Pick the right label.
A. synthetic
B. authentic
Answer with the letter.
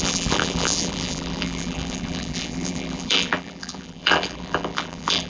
A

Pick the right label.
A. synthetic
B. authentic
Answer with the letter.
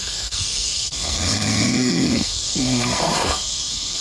A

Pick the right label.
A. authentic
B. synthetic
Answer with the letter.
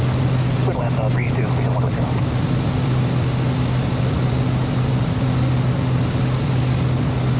A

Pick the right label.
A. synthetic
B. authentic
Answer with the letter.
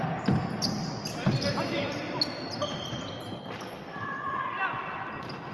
B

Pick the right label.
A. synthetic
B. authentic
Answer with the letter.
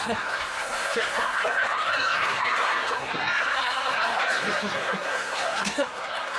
A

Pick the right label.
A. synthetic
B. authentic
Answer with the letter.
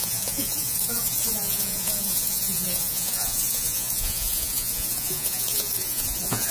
A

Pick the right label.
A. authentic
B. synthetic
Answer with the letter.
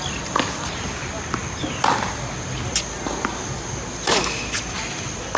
A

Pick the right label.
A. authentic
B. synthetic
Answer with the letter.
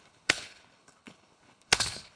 B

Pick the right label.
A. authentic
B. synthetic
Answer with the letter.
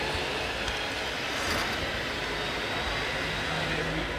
A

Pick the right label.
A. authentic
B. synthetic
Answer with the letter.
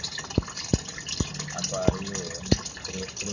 A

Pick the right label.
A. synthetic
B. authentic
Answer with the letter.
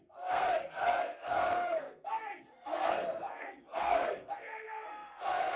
A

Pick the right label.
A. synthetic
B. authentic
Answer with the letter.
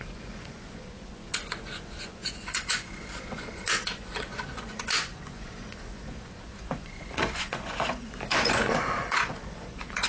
A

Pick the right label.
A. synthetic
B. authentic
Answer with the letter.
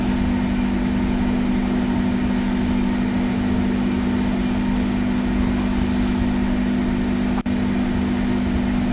B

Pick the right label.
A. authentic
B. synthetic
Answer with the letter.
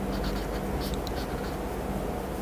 A